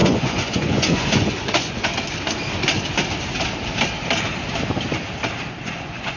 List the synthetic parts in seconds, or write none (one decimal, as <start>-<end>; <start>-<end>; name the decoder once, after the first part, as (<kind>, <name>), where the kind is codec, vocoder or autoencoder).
0.0-1.9 (vocoder, Vocos); 5.6-6.2